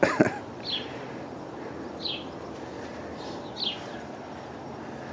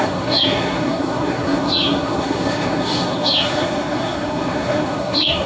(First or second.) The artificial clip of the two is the second